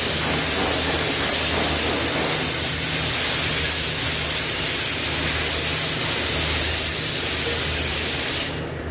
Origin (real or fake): real